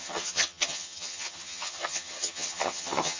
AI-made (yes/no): yes